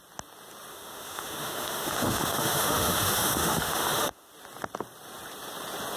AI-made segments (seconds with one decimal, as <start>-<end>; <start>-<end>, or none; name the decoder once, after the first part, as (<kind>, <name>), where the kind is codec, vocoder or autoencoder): 0.7-4.3 (autoencoder, DAC-VAE)